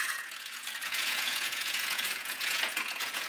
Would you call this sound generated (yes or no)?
yes